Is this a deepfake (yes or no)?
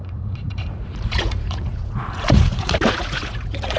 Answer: yes